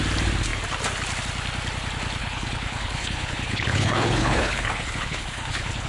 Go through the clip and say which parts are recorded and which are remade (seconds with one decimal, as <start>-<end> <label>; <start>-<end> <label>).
0.0-2.2 recorded; 2.2-5.9 remade